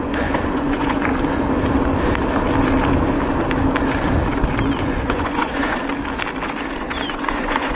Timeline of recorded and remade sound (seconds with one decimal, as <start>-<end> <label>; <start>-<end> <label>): 0.0-1.1 remade; 1.1-4.8 recorded; 4.8-5.8 remade; 5.8-6.8 recorded; 6.8-7.8 remade